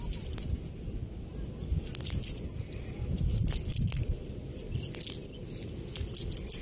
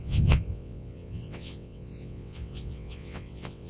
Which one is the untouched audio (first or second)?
first